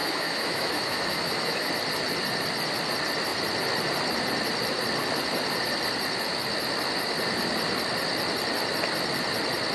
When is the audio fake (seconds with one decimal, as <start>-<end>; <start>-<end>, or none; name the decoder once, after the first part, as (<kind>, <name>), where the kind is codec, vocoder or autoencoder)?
0.0-1.7 (autoencoder, DAC-VAE)